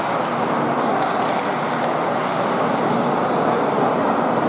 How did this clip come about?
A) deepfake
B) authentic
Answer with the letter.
B